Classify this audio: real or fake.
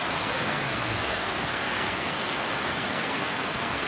fake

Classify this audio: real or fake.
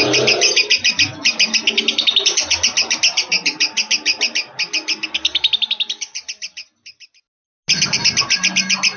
real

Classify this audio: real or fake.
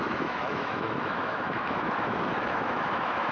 fake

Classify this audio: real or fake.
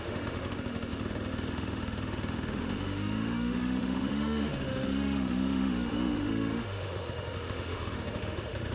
fake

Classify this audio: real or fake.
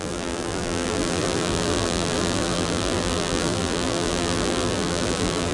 fake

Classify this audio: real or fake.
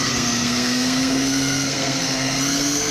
fake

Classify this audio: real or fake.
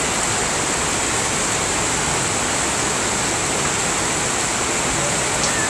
real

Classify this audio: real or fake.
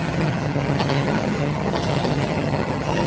fake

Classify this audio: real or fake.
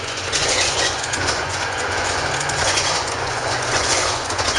fake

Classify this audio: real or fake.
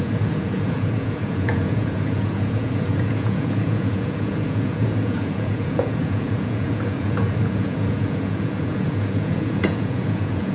fake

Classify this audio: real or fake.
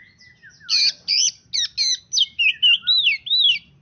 real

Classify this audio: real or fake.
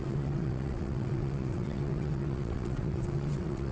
fake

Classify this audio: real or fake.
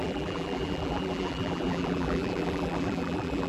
fake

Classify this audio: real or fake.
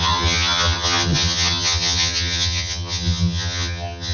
fake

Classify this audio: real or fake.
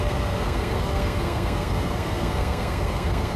fake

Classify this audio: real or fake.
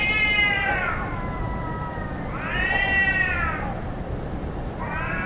fake